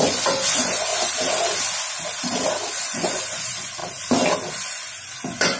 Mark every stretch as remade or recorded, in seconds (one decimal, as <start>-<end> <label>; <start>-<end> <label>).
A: 0.0-0.9 remade; 0.9-2.7 recorded; 2.7-3.8 remade; 3.8-4.5 recorded; 4.5-5.6 remade